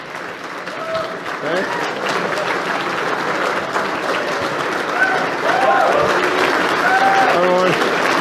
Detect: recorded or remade recorded